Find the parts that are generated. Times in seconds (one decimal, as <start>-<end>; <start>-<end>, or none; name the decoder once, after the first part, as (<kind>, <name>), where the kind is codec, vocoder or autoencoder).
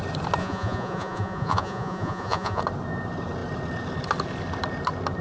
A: 0.4-2.6 (vocoder, Vocos)